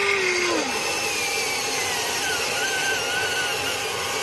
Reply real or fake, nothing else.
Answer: real